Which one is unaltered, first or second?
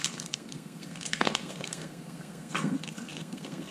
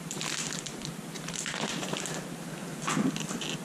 second